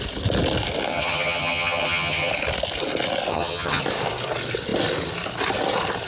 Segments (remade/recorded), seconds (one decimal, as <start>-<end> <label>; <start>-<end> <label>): 0.0-0.9 recorded; 0.9-2.3 remade; 2.3-3.3 recorded; 3.3-3.8 remade; 3.8-6.1 recorded